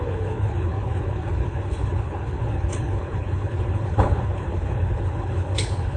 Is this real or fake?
fake